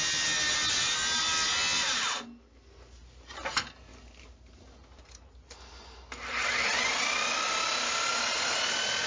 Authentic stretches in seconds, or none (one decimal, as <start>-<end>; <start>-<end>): 0.0-9.1